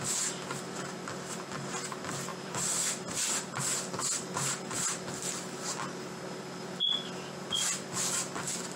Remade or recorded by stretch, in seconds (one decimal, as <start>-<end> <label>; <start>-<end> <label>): 0.0-2.3 recorded; 2.3-3.6 remade; 3.6-8.8 recorded